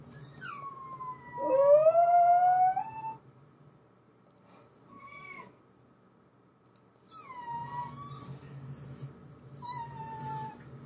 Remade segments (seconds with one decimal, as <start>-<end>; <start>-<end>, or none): 4.9-5.6